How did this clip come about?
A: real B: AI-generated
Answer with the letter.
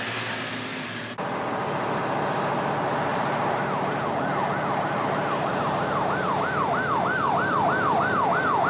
A